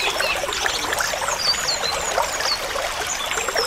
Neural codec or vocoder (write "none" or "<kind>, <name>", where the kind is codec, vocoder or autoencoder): none